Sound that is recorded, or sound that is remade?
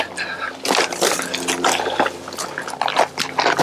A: recorded